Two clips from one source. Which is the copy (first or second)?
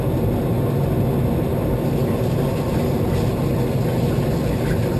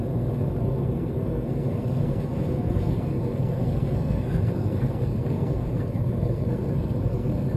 second